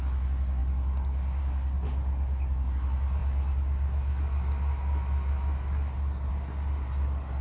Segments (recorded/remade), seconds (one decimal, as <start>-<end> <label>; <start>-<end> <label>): 0.0-7.4 recorded